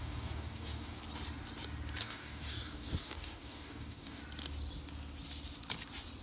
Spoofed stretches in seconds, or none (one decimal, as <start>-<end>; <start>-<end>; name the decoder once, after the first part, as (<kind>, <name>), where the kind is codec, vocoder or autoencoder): 0.0-1.0 (codec, DAC); 2.0-4.2